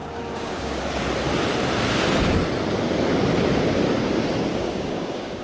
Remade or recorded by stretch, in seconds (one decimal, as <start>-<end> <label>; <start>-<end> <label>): 0.0-0.8 remade; 0.8-4.5 recorded; 4.5-5.4 remade